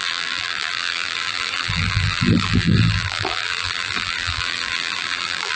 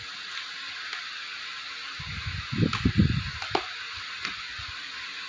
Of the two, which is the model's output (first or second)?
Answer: first